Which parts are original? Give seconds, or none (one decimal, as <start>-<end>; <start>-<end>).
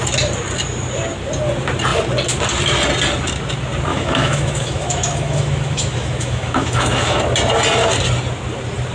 0.0-3.9; 7.2-8.9